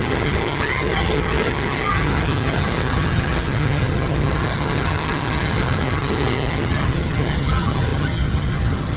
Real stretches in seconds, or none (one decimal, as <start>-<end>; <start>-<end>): none